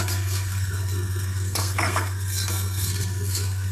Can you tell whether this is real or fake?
fake